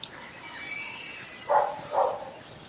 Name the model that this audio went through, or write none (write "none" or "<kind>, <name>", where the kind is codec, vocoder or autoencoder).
none